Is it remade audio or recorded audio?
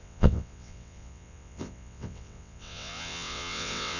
remade